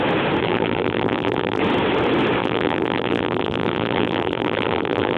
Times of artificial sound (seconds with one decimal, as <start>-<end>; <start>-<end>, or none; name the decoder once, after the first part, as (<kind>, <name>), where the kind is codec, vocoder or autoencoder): 0.4-1.6 (vocoder, BigVGAN v2); 2.4-5.2